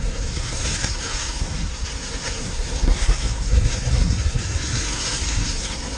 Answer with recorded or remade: remade